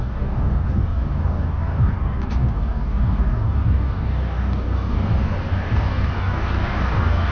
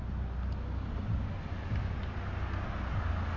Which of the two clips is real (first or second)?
second